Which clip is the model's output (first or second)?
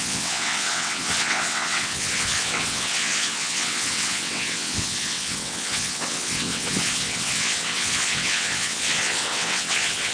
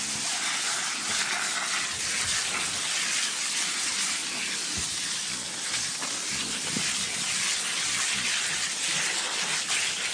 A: first